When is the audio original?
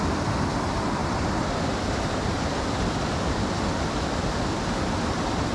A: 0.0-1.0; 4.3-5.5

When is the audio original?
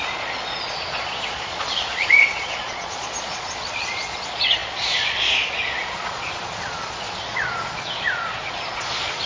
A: none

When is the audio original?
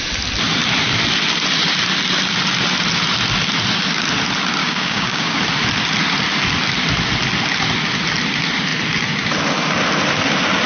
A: 0.0-4.6; 5.4-10.7